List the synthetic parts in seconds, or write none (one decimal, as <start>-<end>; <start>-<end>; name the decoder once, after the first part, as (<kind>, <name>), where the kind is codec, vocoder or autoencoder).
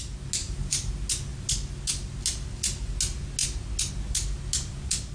0.4-0.9 (vocoder, BigVGAN v2)